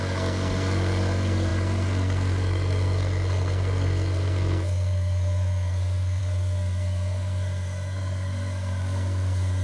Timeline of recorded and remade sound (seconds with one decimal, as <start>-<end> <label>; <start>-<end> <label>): 0.0-9.6 remade